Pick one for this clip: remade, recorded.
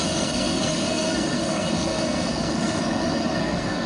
remade